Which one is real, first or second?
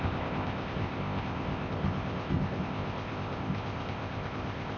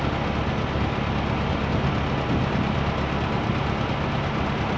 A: second